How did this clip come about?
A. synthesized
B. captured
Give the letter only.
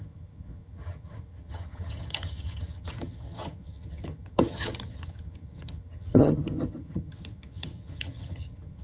A